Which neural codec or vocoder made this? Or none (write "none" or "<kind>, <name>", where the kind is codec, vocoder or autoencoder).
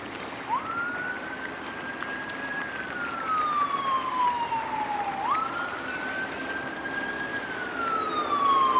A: none